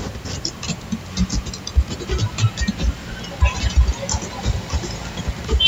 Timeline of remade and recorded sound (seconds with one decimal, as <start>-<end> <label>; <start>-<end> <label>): 0.0-4.3 recorded; 4.3-5.7 remade